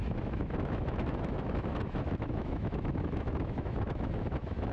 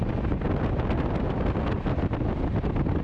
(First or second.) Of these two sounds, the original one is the second